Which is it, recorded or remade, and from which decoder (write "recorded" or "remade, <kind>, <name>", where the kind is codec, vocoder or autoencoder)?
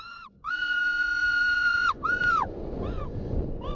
remade, vocoder, Vocos